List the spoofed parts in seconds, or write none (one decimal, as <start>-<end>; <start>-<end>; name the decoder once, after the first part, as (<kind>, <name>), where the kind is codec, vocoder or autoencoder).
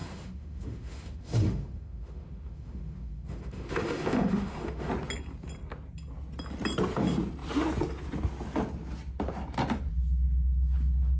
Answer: 0.0-4.9 (autoencoder, DAC-VAE)